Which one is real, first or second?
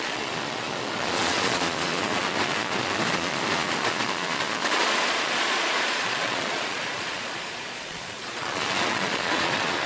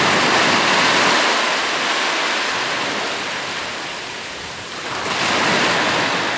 second